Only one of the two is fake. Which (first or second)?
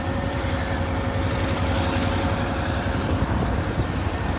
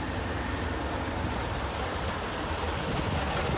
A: first